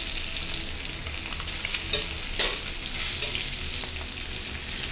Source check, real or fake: real